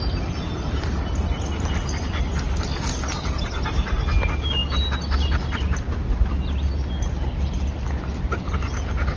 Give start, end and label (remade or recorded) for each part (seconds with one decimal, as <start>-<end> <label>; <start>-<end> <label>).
0.0-9.2 recorded

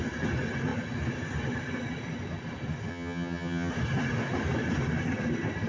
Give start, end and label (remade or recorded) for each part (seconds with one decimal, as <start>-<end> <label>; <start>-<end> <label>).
0.0-2.9 recorded; 2.9-3.7 remade; 3.7-5.7 recorded

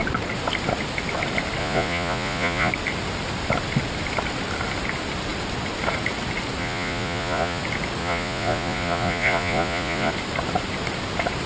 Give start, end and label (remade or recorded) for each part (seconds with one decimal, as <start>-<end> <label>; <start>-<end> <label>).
0.0-1.6 recorded; 1.6-2.7 remade; 2.7-6.6 recorded; 6.6-7.6 remade; 7.6-8.0 recorded; 8.0-10.1 remade; 10.1-11.5 recorded

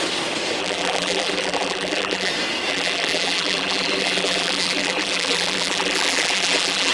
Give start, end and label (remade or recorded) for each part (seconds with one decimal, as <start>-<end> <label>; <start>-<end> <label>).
0.0-0.6 recorded; 0.6-2.3 remade; 2.3-2.7 recorded; 2.7-6.9 remade

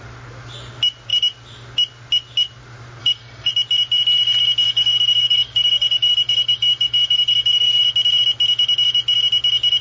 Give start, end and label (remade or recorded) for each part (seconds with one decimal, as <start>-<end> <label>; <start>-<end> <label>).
0.0-3.0 recorded; 3.0-3.5 remade; 3.5-4.6 recorded; 4.6-7.8 remade; 7.8-9.8 recorded

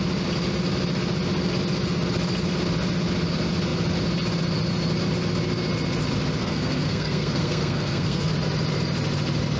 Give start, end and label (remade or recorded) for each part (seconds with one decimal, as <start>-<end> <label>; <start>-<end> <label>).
0.0-6.4 recorded; 6.4-8.3 remade; 8.3-9.6 recorded